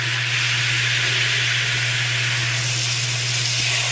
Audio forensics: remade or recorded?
recorded